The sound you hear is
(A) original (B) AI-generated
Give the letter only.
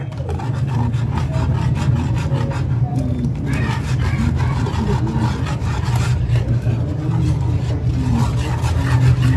A